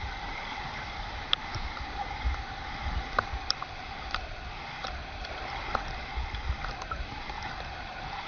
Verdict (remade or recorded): remade